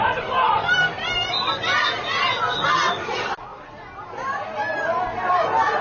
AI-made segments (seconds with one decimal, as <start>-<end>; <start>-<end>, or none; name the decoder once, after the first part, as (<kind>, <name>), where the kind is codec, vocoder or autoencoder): none